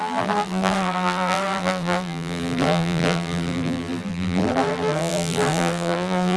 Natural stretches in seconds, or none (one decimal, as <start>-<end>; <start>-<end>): none